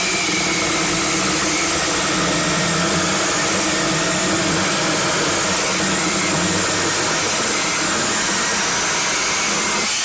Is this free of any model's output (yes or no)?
yes